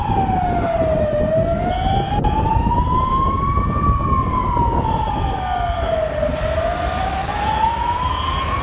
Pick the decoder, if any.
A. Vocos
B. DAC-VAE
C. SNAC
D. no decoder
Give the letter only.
D